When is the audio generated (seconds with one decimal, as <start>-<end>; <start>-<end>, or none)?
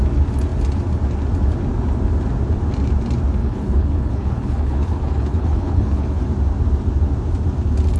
3.4-6.2